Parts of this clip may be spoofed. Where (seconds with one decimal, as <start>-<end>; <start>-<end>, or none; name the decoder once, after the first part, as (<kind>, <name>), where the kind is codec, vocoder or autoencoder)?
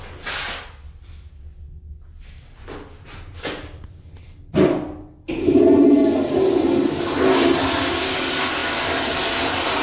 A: none